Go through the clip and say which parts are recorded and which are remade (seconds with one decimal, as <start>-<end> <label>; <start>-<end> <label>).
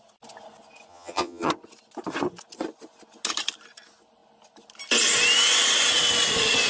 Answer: 0.0-0.9 recorded; 0.9-1.5 remade; 1.5-6.7 recorded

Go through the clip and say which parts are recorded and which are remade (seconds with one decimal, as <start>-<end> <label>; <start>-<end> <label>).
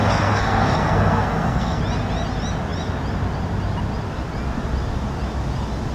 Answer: 0.0-1.8 remade; 1.8-5.9 recorded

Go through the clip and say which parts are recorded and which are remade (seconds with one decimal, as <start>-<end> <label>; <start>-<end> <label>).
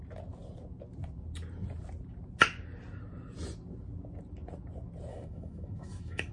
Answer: 0.0-5.1 recorded; 5.1-6.3 remade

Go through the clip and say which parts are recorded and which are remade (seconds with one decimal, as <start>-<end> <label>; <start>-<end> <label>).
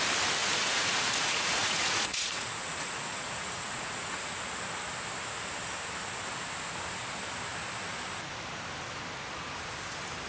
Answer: 0.0-0.4 recorded; 0.4-4.4 remade; 4.4-10.3 recorded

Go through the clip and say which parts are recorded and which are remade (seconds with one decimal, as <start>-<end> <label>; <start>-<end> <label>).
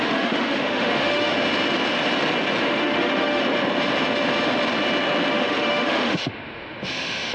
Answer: 0.0-1.3 remade; 1.3-2.6 recorded; 2.6-3.4 remade; 3.4-5.3 recorded; 5.3-7.3 remade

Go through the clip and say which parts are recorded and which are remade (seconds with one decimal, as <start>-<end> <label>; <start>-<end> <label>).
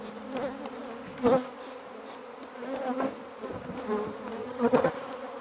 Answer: 0.0-4.4 recorded; 4.4-4.9 remade; 4.9-5.4 recorded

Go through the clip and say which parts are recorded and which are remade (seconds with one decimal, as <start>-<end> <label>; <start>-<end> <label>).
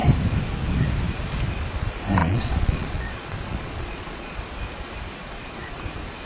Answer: 0.0-2.2 recorded; 2.2-4.4 remade; 4.4-5.2 recorded; 5.2-5.8 remade; 5.8-6.3 recorded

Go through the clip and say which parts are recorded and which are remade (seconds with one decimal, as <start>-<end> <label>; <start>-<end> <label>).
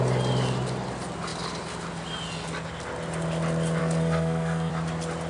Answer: 0.0-3.8 recorded; 3.8-4.7 remade; 4.7-5.3 recorded